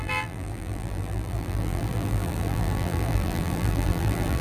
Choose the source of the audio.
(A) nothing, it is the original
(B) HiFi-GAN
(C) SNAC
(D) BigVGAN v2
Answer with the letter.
D